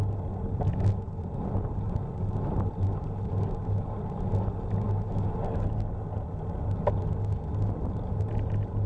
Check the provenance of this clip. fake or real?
real